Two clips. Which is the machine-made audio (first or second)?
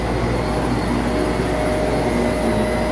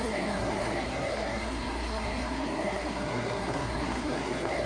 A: second